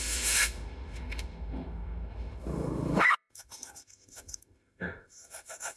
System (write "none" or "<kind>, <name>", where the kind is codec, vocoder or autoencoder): autoencoder, DAC-VAE